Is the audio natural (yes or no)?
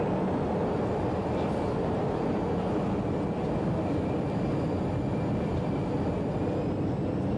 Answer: yes